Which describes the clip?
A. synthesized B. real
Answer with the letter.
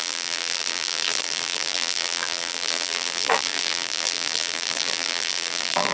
A